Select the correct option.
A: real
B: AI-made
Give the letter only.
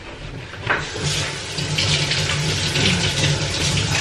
A